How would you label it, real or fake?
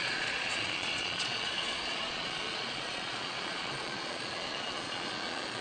fake